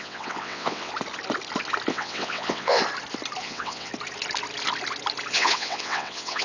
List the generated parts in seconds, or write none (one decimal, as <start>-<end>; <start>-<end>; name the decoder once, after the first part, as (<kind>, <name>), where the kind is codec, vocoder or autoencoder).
0.0-0.9 (vocoder, WaveNeXt); 1.9-2.8; 3.4-3.9; 5.3-6.4